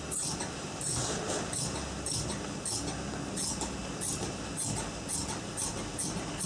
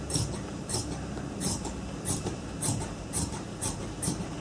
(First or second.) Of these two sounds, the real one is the first